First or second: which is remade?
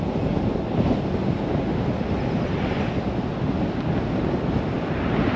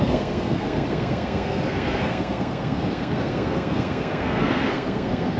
second